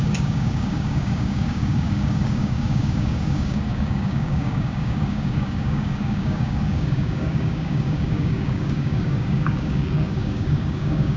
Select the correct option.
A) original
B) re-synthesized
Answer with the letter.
B